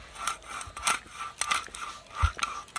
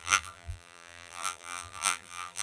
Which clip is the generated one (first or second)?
second